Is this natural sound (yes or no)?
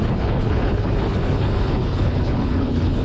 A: no